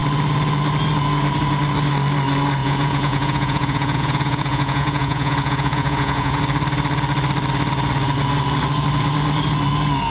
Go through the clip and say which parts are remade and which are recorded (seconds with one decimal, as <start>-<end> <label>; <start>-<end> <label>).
0.0-2.6 recorded; 2.6-6.4 remade; 6.4-10.1 recorded